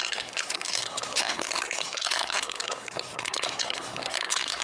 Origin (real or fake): fake